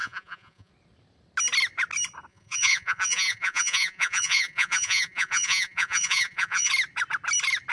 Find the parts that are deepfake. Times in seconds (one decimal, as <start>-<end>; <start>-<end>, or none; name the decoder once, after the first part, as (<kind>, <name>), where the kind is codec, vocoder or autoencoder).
0.0-0.7 (vocoder, Vocos); 2.3-6.7